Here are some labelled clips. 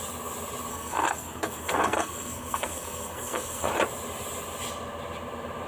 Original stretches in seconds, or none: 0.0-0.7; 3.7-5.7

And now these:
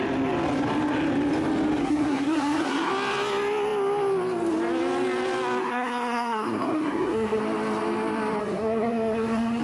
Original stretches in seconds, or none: 0.0-1.8; 2.9-5.6; 7.4-8.4

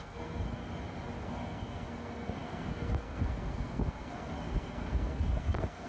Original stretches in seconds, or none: 0.6-1.2

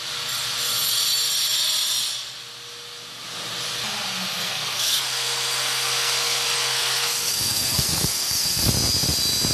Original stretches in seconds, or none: 0.0-4.4; 8.7-9.5

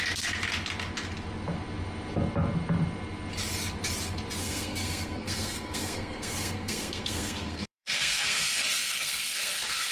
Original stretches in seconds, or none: 0.0-4.4

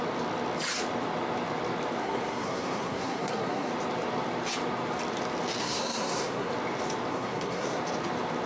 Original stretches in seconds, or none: 0.0-2.0; 3.7-5.6; 6.5-7.1; 7.8-8.5

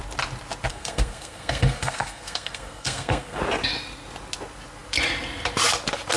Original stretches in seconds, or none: 0.0-0.7; 3.4-6.2

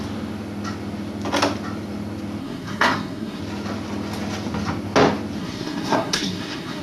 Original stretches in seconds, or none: 0.0-2.4; 3.4-5.4